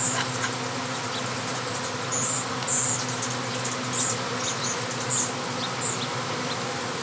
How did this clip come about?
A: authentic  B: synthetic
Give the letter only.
A